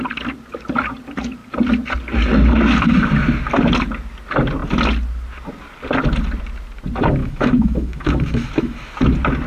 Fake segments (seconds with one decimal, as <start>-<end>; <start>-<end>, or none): 7.2-8.9